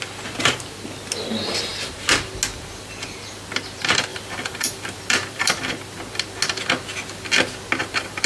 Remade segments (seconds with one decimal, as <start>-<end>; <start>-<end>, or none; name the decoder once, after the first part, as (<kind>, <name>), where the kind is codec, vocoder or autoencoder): 4.1-6.0 (vocoder, BigVGAN v2)